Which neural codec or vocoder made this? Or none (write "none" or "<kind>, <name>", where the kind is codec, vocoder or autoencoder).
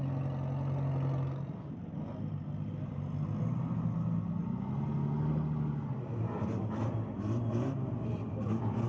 none